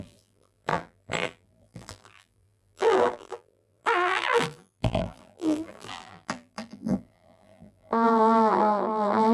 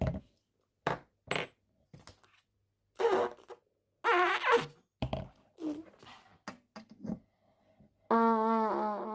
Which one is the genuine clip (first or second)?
second